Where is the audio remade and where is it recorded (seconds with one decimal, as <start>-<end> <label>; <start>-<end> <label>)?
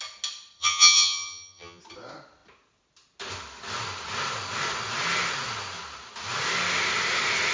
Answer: 0.0-0.6 recorded; 0.6-1.8 remade; 1.8-7.5 recorded